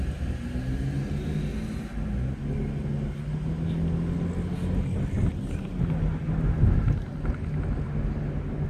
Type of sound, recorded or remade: recorded